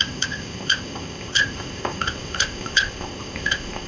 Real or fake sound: fake